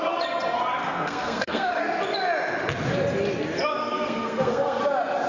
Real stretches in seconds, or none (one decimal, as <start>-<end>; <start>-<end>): 0.0-0.8; 1.8-3.8; 4.8-5.3